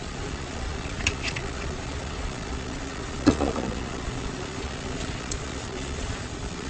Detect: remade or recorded remade